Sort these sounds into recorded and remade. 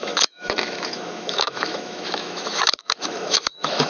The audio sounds remade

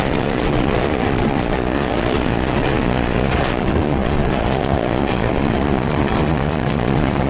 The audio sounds remade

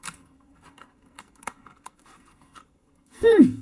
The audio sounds remade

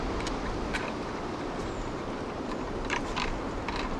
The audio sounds remade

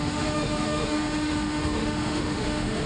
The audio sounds remade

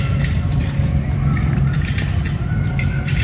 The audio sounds recorded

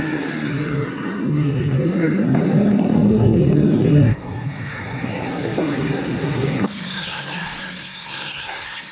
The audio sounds remade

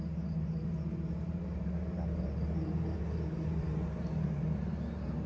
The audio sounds remade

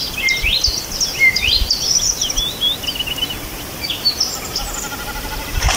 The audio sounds recorded